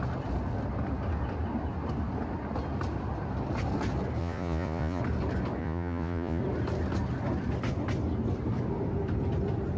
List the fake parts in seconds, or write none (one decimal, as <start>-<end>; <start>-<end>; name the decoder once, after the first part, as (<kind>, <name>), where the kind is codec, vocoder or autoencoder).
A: 4.2-5.0 (vocoder, Vocos); 5.6-6.4